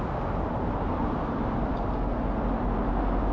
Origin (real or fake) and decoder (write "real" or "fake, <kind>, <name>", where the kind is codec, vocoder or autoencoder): real